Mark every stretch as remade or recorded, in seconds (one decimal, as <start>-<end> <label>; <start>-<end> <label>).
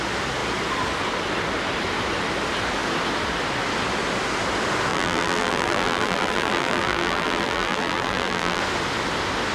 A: 0.0-4.9 recorded; 4.9-8.6 remade; 8.6-9.5 recorded